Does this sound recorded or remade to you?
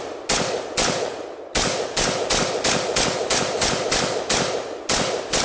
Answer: recorded